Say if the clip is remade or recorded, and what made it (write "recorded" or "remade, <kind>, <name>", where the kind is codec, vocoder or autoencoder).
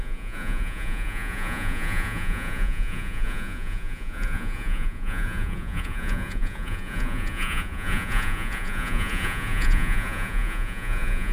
remade, vocoder, Vocos